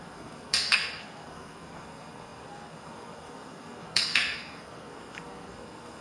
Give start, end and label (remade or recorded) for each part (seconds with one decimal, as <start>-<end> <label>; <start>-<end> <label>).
0.0-6.0 remade